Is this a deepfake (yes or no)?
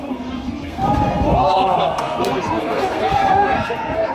yes